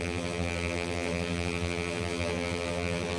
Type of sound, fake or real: fake